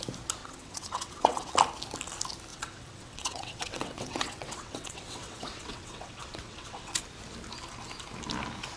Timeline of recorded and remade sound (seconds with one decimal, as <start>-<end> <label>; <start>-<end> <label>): 0.0-0.4 recorded; 0.4-1.5 remade; 1.5-2.5 recorded; 2.5-7.0 remade; 7.0-8.8 recorded